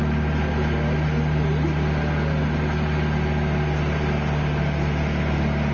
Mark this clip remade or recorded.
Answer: recorded